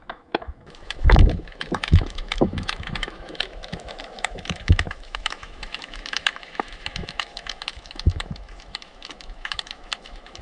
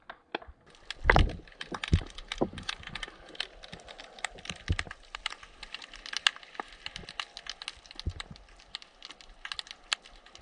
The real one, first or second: second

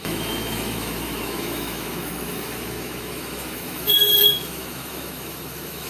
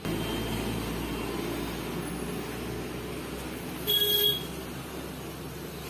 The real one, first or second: second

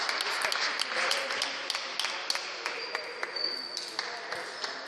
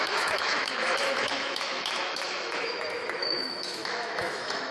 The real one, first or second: first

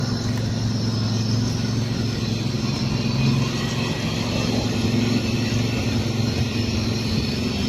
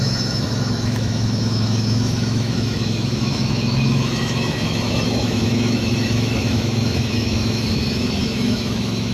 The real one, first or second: first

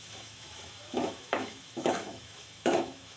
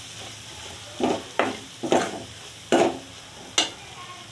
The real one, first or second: second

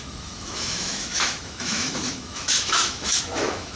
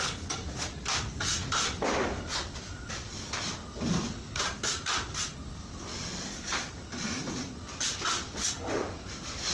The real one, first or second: second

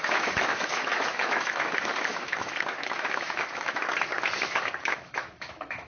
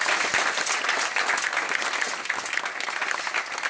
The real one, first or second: second